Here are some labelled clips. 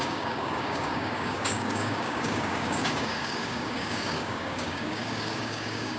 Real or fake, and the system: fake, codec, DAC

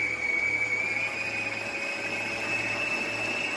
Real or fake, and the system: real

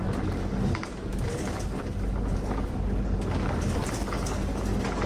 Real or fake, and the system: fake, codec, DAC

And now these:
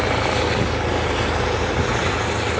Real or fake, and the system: real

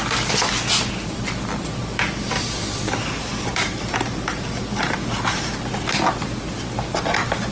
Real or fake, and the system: real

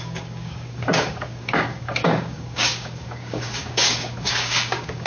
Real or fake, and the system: fake, codec, DAC